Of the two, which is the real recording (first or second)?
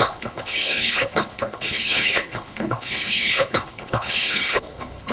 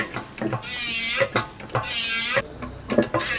second